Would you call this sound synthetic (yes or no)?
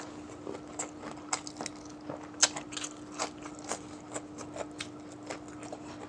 no